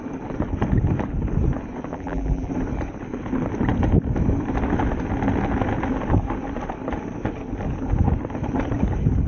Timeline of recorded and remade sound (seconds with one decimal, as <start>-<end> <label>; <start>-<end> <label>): 0.0-1.9 recorded; 1.9-2.5 remade; 2.5-9.3 recorded